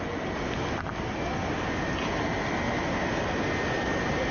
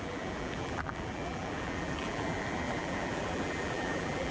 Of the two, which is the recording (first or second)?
first